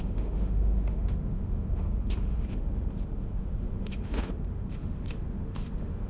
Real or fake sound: fake